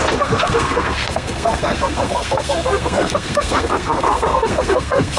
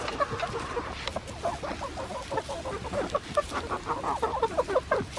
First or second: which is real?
second